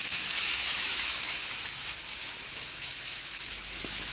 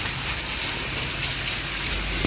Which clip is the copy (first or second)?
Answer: first